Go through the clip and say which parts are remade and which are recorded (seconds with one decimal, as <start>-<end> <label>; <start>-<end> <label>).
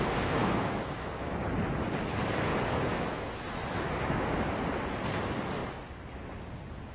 0.0-0.4 recorded; 0.4-1.3 remade; 1.3-2.5 recorded; 2.5-4.3 remade; 4.3-6.9 recorded